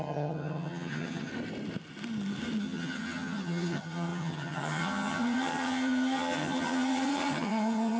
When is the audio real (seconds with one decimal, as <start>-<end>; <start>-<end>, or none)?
1.3-2.6